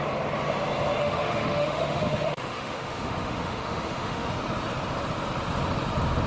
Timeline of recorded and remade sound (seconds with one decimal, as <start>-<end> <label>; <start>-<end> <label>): 0.0-1.0 recorded; 1.0-4.3 remade; 4.3-6.3 recorded